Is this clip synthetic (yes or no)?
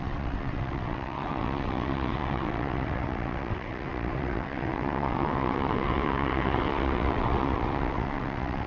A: yes